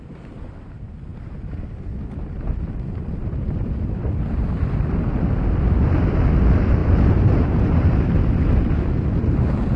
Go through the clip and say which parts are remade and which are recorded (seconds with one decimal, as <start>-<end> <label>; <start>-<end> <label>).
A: 0.0-6.8 recorded; 6.8-8.2 remade; 8.2-9.8 recorded